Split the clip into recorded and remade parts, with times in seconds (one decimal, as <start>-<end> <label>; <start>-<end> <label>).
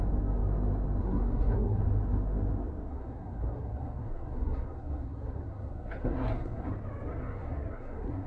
0.0-1.0 recorded; 1.0-1.8 remade; 1.8-2.9 recorded; 2.9-6.7 remade; 6.7-7.2 recorded; 7.2-8.3 remade